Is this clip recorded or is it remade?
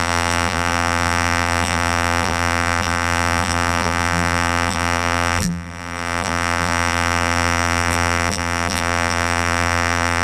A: remade